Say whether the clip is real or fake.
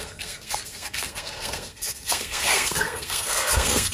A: fake